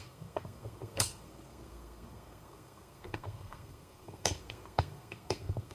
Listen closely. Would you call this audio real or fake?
fake